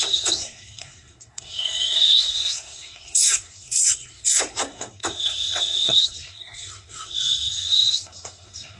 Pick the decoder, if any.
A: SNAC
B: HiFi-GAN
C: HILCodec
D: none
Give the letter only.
A